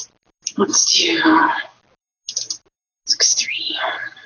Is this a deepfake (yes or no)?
no